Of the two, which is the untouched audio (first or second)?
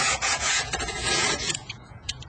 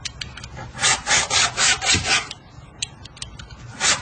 second